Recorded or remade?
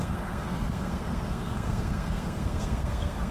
remade